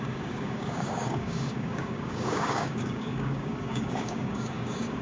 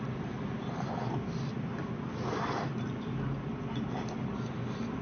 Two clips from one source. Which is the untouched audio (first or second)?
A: second